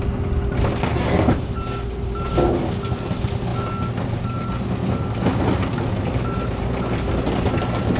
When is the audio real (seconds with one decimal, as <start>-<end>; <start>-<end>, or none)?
0.0-0.9; 2.3-8.0